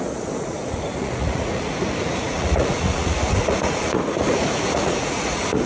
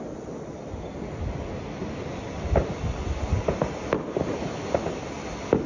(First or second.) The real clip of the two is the second